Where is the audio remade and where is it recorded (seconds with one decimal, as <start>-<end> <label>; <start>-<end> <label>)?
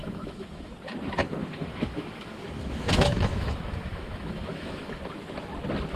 0.0-0.7 remade; 0.7-1.4 recorded; 1.4-5.0 remade; 5.0-6.0 recorded